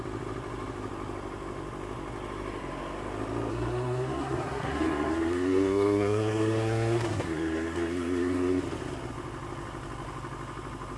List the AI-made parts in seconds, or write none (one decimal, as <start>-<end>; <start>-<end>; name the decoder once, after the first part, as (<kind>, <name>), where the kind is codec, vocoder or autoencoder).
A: 3.5-8.6 (codec, SNAC)